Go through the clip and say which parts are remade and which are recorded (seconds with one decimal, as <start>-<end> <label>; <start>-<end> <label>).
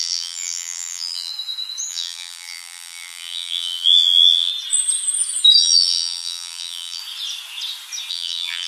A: 0.0-1.3 remade; 1.3-1.9 recorded; 1.9-4.5 remade; 4.5-5.6 recorded; 5.6-7.0 remade; 7.0-8.1 recorded; 8.1-8.7 remade